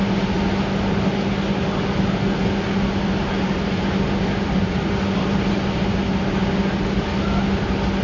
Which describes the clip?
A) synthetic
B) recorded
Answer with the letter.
B